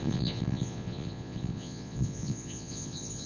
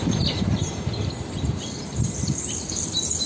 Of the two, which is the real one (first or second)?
second